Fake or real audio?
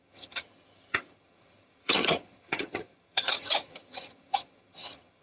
fake